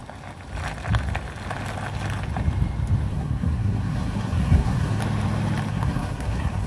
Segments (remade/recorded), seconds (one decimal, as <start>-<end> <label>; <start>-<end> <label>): 0.0-3.1 recorded; 3.1-5.0 remade; 5.0-5.7 recorded; 5.7-6.7 remade